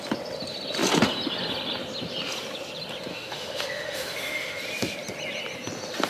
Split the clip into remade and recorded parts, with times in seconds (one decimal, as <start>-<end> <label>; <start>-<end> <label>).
0.0-3.1 recorded; 3.1-4.6 remade; 4.6-6.1 recorded